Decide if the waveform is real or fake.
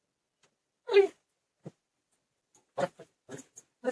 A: real